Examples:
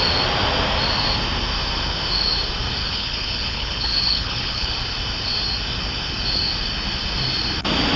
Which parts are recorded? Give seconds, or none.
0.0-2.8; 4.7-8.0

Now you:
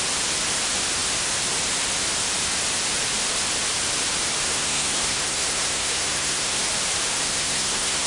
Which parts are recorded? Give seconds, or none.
0.0-4.5; 6.6-7.3

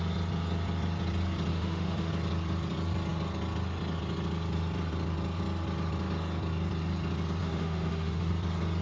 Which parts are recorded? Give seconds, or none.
0.0-1.5; 2.1-7.4; 8.3-8.8

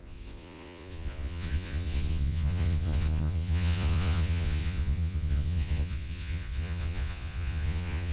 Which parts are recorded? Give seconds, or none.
none

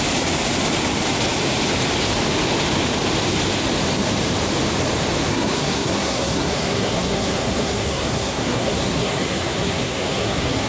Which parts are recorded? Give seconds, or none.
0.0-5.3

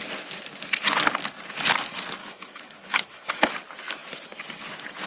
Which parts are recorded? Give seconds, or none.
0.0-2.2; 3.5-5.1

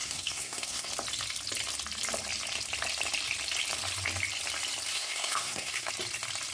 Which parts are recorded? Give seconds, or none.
0.9-4.9; 5.9-6.5